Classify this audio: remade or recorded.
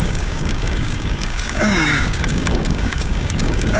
remade